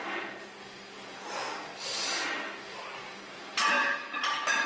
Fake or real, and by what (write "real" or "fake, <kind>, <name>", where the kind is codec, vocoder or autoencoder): real